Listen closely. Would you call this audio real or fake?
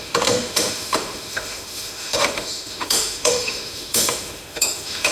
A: fake